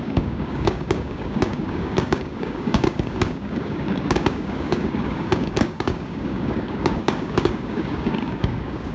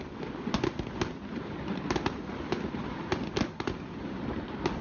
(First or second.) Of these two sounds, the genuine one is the second